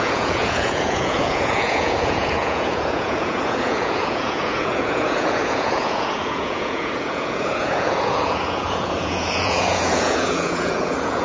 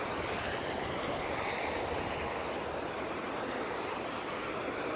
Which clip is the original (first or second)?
second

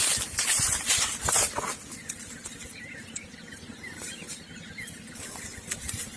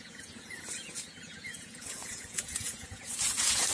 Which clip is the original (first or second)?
first